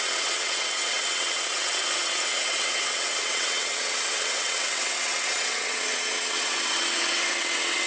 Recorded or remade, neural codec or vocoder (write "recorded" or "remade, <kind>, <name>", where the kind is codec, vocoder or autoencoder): remade, vocoder, WaveNeXt